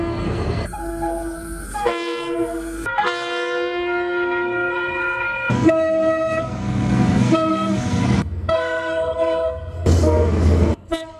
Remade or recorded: remade